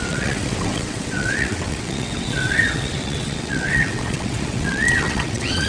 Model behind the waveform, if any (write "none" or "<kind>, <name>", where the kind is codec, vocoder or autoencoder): vocoder, WaveNeXt